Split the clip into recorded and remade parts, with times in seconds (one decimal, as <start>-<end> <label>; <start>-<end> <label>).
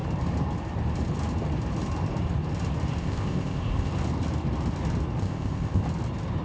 0.0-3.0 recorded; 3.0-3.9 remade; 3.9-5.2 recorded; 5.2-5.8 remade; 5.8-6.4 recorded